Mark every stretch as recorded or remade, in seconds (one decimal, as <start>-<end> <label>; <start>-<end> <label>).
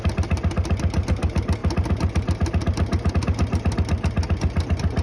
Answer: 0.0-5.0 recorded